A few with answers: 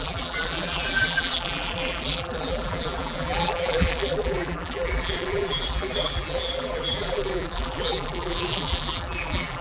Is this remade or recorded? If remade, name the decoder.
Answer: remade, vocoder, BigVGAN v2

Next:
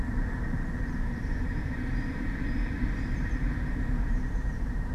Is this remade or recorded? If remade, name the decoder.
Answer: remade, vocoder, BigVGAN v2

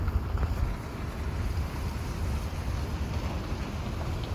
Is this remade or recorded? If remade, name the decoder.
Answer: recorded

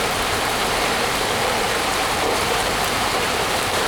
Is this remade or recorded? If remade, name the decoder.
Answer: remade, vocoder, BigVGAN v2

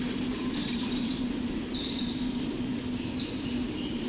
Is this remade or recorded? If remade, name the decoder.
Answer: remade, vocoder, BigVGAN v2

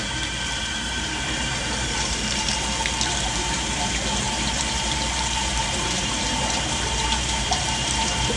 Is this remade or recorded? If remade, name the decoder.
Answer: remade, vocoder, BigVGAN v2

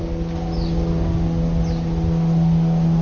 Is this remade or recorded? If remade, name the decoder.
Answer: recorded